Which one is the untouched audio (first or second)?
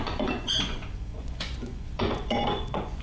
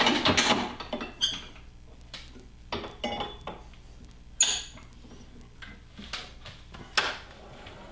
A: second